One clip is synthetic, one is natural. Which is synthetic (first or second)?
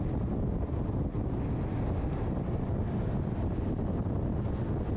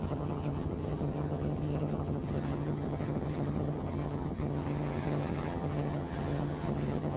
second